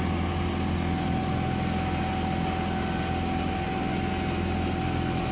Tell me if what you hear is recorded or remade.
recorded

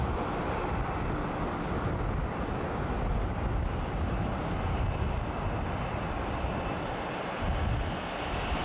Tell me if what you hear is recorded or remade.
recorded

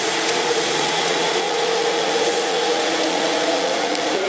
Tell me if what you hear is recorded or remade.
remade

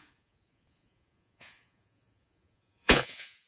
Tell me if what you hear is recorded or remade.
remade